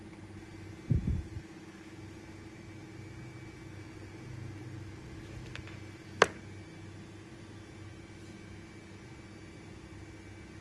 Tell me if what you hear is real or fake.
real